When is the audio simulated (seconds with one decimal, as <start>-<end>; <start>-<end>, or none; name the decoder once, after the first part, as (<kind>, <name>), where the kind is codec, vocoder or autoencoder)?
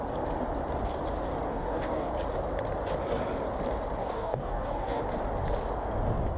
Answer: 1.5-2.1 (codec, DAC); 4.0-5.0